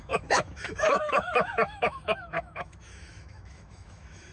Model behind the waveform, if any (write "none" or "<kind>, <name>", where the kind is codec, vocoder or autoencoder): autoencoder, DAC-VAE